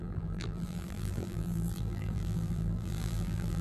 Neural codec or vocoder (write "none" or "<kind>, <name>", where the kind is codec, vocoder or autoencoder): vocoder, BigVGAN v2